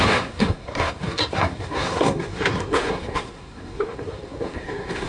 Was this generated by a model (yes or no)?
yes